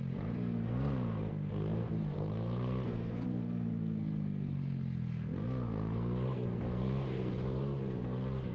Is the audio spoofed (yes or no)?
yes